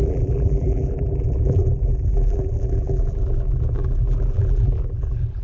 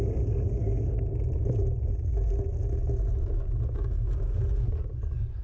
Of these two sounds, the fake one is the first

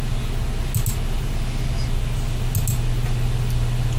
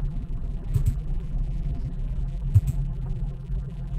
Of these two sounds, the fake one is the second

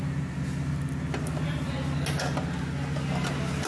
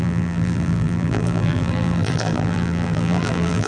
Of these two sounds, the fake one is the second